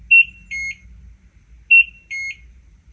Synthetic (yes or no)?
no